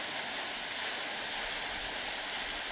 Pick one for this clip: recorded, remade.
recorded